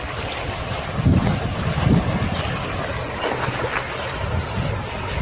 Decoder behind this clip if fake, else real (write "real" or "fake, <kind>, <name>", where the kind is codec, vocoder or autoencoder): real